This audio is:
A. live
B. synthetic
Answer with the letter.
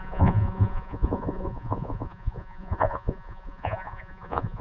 B